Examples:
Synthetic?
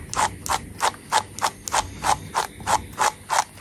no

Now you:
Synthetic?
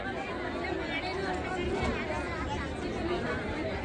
no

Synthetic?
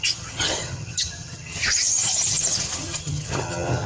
yes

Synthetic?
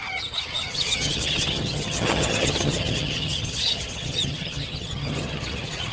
yes